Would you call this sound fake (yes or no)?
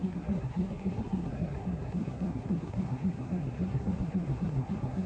yes